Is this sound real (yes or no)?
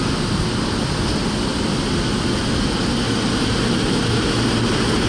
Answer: yes